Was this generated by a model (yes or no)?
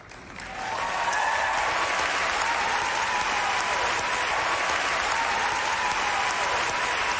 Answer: yes